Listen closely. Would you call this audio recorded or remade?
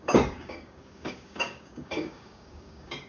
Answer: remade